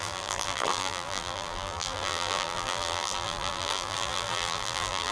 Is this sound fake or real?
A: fake